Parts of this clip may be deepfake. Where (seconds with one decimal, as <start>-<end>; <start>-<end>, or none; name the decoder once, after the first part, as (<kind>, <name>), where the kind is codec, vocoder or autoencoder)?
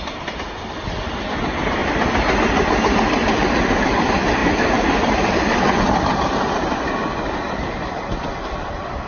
0.0-1.8 (vocoder, BigVGAN v2); 3.5-9.1